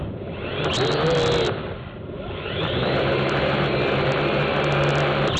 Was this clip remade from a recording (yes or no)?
no